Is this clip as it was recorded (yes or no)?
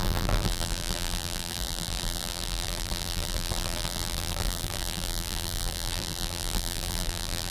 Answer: no